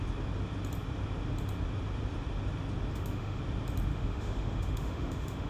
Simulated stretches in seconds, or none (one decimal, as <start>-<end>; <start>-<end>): 2.9-3.4; 3.9-5.5